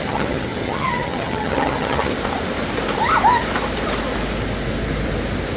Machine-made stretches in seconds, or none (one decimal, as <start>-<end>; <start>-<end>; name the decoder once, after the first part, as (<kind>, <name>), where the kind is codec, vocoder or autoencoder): 0.0-2.1 (vocoder, HiFi-GAN)